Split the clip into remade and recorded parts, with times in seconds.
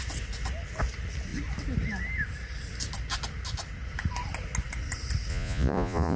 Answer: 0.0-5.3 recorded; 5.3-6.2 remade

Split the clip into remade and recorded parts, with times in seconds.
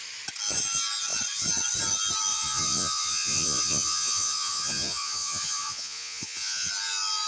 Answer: 0.0-2.3 recorded; 2.3-6.7 remade; 6.7-7.3 recorded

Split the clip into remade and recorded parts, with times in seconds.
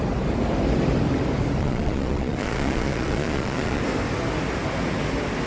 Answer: 0.0-1.6 recorded; 1.6-3.8 remade; 3.8-5.5 recorded